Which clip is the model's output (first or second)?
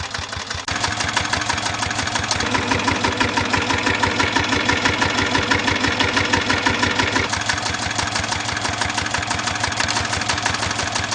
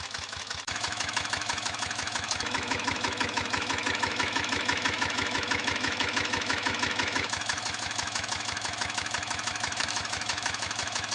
second